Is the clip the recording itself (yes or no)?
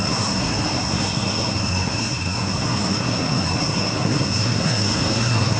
no